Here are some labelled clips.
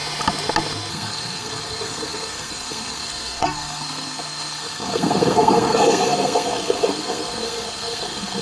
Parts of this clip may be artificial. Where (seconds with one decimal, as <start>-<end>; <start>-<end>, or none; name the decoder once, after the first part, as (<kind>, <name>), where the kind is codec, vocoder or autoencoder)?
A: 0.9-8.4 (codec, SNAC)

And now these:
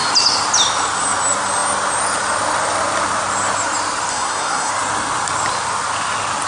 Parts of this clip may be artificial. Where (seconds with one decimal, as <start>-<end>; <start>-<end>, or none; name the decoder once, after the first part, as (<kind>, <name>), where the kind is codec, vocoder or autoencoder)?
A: 4.1-4.7 (codec, SNAC)

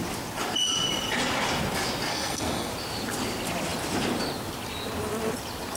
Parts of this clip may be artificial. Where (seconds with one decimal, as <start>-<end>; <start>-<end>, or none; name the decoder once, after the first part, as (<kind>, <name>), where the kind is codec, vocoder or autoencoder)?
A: 2.1-2.7 (codec, SNAC)

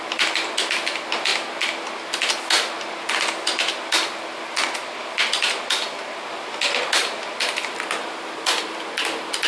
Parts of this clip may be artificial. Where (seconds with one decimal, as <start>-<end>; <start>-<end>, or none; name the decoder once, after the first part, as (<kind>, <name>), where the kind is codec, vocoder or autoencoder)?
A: none

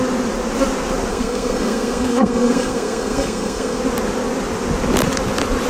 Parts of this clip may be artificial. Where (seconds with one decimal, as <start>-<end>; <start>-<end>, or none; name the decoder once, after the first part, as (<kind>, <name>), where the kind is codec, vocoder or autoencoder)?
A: 1.1-3.8 (codec, SNAC)